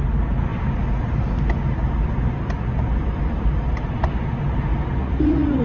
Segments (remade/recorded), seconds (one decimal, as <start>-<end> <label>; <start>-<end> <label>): 0.0-5.0 recorded; 5.0-5.6 remade